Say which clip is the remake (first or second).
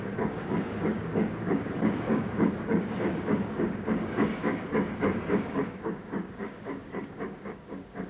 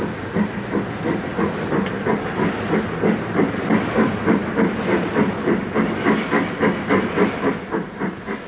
first